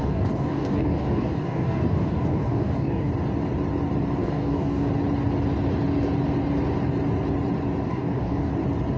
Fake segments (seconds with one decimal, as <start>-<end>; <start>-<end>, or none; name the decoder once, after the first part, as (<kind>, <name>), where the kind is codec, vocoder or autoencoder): 0.0-3.1 (codec, DAC); 4.2-4.9; 7.9-8.5

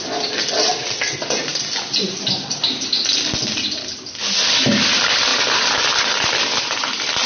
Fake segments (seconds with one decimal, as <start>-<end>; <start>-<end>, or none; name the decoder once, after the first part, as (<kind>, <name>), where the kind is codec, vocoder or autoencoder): none

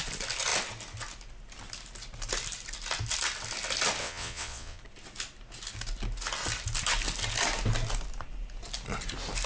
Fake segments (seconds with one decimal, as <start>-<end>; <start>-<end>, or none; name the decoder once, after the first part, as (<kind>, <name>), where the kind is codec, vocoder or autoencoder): 4.0-4.8 (vocoder, WaveNeXt)